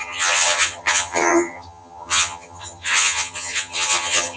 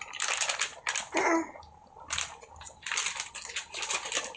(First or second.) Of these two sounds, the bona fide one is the second